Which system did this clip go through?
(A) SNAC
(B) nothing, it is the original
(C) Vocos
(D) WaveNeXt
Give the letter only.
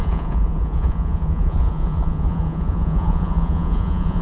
C